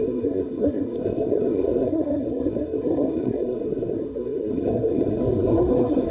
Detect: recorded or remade remade